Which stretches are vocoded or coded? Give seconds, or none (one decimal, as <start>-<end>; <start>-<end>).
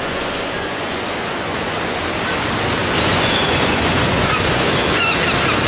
0.0-2.0; 2.8-5.2